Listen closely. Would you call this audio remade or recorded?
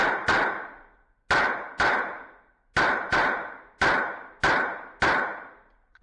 recorded